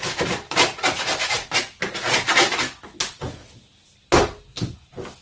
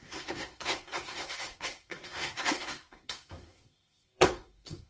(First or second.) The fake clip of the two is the second